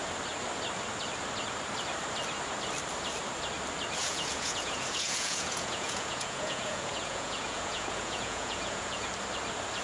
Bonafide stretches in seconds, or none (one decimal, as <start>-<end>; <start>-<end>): 0.0-4.0; 9.1-9.8